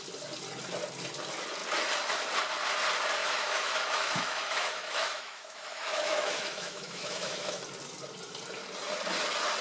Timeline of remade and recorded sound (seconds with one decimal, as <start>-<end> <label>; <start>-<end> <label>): 0.0-3.2 recorded; 3.2-7.6 remade; 7.6-9.6 recorded